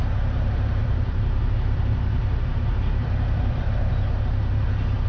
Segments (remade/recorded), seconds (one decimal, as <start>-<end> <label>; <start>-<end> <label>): 0.0-0.8 recorded; 0.8-3.9 remade; 3.9-5.1 recorded